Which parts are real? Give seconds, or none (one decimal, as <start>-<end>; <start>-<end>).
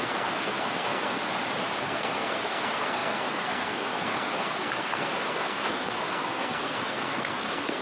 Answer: 1.2-1.8